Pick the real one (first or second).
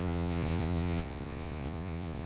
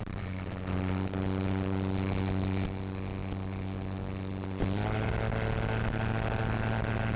second